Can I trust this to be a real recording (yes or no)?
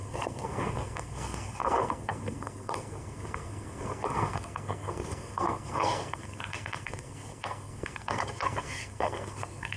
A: no